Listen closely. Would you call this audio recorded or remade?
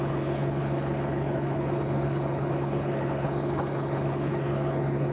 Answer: remade